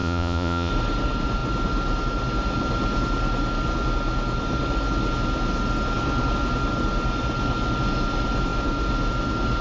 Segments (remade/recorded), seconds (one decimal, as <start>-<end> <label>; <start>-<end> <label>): 0.0-0.7 remade; 0.7-9.6 recorded